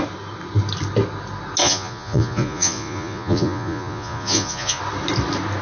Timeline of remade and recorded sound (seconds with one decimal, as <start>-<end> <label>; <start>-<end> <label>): 0.0-1.6 recorded; 1.6-4.8 remade; 4.8-5.6 recorded